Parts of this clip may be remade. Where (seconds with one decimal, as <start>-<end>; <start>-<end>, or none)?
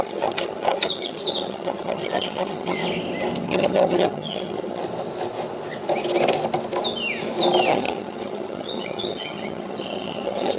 0.0-2.8; 3.4-4.8; 7.7-10.6